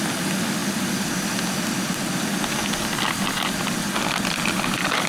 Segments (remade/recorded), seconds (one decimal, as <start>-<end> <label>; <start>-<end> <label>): 0.0-5.1 recorded